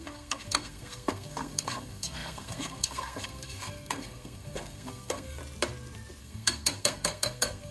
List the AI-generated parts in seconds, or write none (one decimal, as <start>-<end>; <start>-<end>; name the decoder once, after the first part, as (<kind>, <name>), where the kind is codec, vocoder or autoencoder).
0.0-5.4 (codec, SNAC); 6.2-7.7

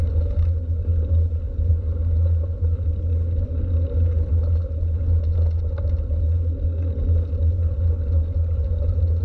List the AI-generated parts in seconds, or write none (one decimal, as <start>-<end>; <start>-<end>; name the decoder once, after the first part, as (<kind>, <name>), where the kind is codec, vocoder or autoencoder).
none

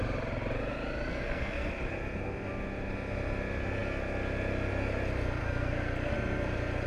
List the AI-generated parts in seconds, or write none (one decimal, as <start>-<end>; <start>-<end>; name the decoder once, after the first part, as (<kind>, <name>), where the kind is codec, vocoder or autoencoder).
1.1-1.7 (codec, SNAC); 5.4-6.1

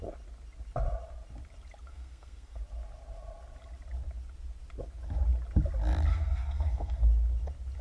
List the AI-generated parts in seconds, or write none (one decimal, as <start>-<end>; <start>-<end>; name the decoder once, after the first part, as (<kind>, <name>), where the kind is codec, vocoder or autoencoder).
1.9-2.6 (codec, SNAC); 6.1-7.0

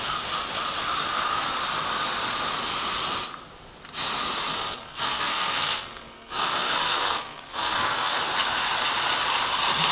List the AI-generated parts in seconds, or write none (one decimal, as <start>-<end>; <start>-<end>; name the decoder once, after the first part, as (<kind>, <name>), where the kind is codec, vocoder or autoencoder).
4.5-8.1 (codec, SNAC)